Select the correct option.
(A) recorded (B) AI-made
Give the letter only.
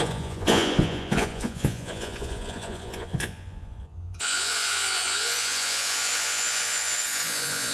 B